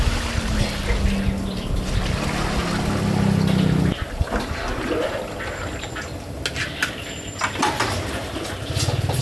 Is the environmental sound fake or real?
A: real